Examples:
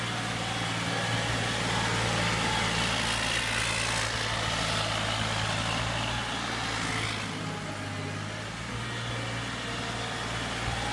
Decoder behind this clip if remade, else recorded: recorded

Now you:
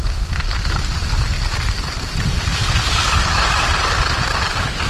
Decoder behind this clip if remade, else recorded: recorded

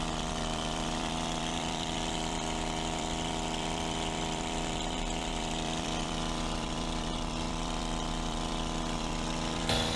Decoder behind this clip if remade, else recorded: remade, vocoder, BigVGAN v2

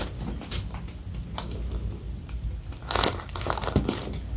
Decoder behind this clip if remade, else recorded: recorded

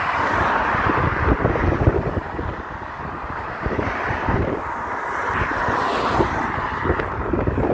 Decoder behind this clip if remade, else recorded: remade, vocoder, BigVGAN v2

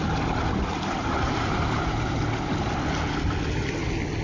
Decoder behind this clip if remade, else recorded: recorded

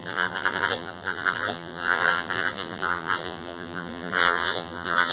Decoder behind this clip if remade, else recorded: remade, vocoder, BigVGAN v2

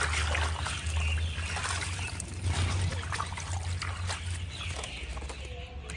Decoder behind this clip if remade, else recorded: recorded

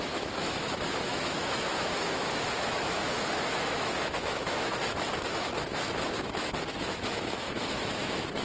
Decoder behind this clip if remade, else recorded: remade, autoencoder, DAC-VAE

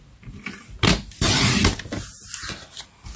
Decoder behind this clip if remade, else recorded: recorded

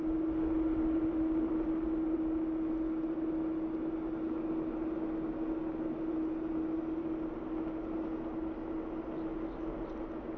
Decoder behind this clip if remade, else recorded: recorded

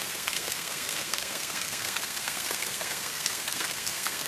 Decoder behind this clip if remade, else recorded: remade, codec, SNAC